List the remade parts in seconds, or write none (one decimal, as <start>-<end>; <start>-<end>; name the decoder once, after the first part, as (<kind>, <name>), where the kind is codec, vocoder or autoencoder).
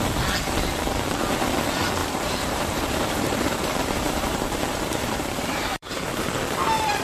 2.0-6.2 (vocoder, BigVGAN v2)